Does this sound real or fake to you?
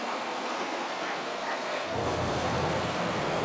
fake